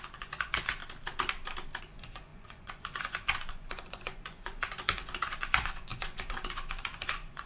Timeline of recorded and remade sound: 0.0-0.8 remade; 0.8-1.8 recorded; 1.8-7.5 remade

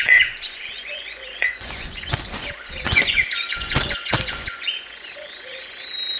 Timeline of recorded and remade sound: 0.0-6.2 remade

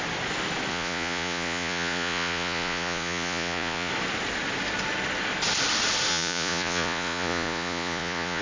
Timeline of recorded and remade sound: 0.0-0.7 recorded; 0.7-3.9 remade; 3.9-6.1 recorded; 6.1-8.4 remade

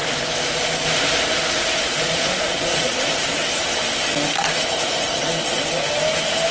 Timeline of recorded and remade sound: 0.0-1.7 recorded; 1.7-3.0 remade; 3.0-6.5 recorded

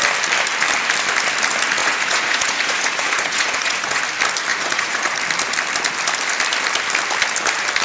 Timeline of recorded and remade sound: 0.0-1.8 recorded; 1.8-4.0 remade; 4.0-4.5 recorded; 4.5-5.2 remade; 5.2-7.8 recorded

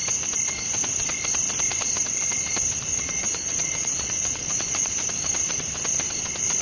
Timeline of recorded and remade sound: 0.0-2.9 recorded; 2.9-4.9 remade; 4.9-6.6 recorded

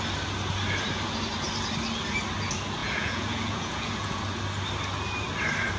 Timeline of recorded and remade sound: 0.0-2.8 recorded; 2.8-4.2 remade; 4.2-5.8 recorded